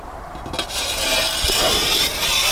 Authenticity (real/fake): real